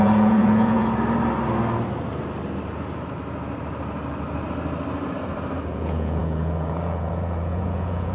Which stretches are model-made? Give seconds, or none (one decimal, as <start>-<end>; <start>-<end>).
0.0-0.8; 5.7-8.1